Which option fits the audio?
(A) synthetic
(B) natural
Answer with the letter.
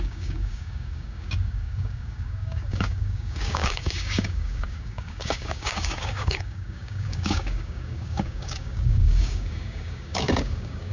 A